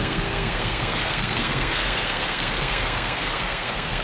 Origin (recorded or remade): remade